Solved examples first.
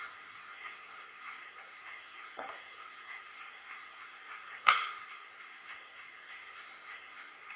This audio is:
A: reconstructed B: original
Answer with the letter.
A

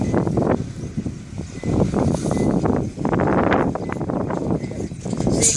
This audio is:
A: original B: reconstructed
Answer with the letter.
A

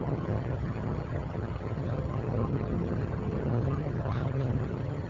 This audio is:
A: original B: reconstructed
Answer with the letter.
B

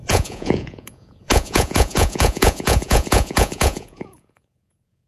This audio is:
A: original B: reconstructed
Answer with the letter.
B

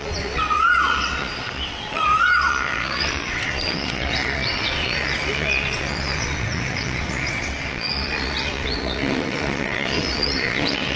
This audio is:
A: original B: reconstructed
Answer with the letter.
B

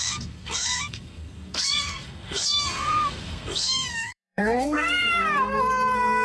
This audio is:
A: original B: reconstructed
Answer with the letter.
B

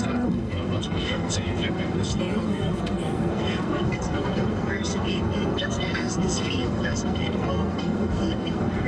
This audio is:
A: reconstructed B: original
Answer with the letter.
A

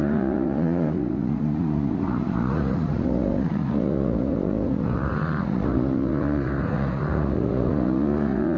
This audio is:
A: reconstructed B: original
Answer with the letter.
A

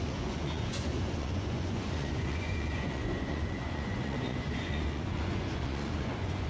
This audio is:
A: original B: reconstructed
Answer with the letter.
B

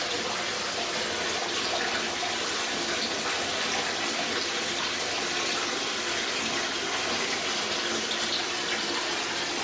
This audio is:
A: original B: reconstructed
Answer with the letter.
A